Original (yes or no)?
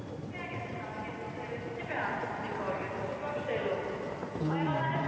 yes